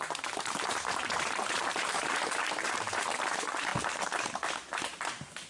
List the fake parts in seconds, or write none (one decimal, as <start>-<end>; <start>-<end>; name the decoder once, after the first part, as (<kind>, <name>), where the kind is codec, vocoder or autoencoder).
0.0-3.7 (vocoder, BigVGAN v2); 5.1-5.5